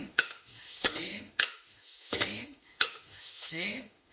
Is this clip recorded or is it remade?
remade